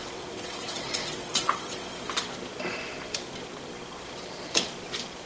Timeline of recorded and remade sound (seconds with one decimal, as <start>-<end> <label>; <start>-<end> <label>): 0.0-2.0 remade; 2.0-5.3 recorded